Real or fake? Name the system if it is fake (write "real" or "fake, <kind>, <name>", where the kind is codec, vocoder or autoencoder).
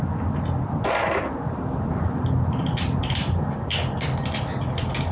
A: real